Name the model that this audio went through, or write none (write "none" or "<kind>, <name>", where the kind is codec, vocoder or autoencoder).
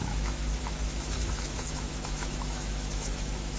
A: autoencoder, DAC-VAE